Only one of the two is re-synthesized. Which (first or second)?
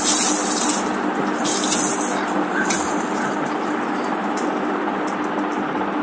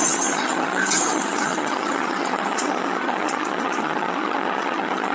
second